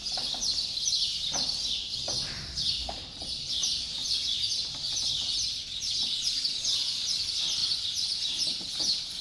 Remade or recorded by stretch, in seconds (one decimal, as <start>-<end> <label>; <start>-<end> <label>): 0.0-1.1 recorded; 1.1-4.1 remade; 4.1-7.6 recorded; 7.6-8.3 remade; 8.3-9.2 recorded

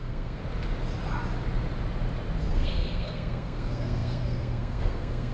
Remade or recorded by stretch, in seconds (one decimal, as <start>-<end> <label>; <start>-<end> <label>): 0.0-0.4 remade; 0.4-2.4 recorded; 2.4-5.3 remade